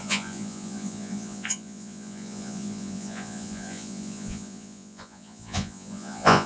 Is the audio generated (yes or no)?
yes